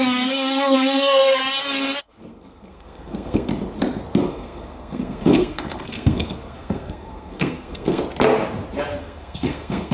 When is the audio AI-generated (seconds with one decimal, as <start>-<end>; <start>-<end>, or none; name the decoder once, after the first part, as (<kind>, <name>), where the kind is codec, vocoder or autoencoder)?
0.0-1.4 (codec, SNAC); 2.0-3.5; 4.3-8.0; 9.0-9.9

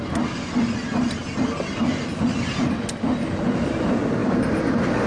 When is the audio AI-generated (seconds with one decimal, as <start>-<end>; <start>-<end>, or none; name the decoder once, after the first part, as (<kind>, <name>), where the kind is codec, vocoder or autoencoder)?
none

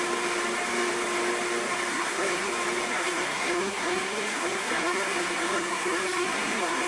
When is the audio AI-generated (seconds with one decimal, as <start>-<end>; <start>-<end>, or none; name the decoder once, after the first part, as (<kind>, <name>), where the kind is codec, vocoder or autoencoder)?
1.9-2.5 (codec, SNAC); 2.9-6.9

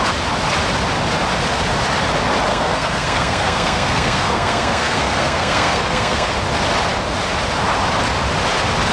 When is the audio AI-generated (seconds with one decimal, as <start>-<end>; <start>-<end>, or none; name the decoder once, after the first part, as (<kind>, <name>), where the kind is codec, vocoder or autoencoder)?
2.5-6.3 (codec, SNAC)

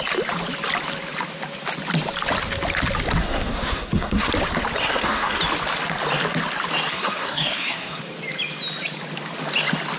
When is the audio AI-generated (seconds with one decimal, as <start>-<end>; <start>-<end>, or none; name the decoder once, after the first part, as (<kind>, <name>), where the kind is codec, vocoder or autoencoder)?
3.2-4.3 (codec, SNAC); 4.8-5.4; 6.9-8.0

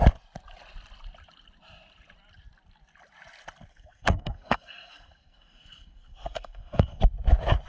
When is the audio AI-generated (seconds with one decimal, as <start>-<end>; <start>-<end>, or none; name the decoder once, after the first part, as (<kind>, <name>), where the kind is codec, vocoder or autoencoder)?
3.7-7.0 (codec, SNAC)

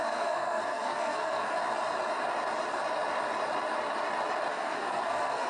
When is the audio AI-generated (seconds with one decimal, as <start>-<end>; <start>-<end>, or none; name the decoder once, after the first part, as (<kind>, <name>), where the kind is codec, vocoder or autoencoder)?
0.0-1.6 (codec, SNAC); 4.5-5.5

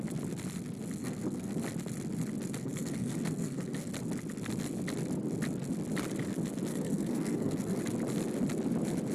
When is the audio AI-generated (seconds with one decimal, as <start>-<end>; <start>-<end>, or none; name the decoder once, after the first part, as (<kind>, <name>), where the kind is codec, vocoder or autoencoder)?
1.0-1.5 (codec, SNAC); 2.6-3.9; 6.7-7.8